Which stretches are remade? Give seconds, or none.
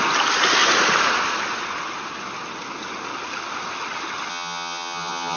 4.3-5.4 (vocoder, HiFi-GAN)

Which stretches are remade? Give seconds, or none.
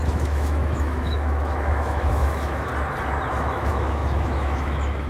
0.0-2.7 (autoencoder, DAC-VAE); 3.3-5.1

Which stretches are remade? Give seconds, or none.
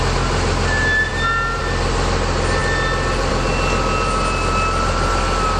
none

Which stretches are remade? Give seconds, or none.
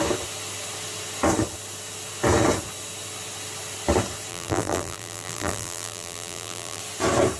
4.3-6.8 (vocoder, BigVGAN v2)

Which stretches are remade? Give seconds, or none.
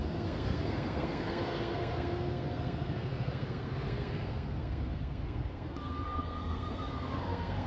0.0-7.7 (codec, SNAC)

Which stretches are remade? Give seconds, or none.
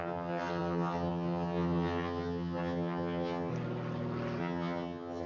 0.0-3.5 (vocoder, HiFi-GAN); 4.4-5.3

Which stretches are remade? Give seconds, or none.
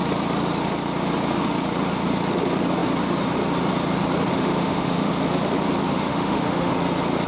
4.3-5.1 (autoencoder, DAC-VAE); 6.1-6.7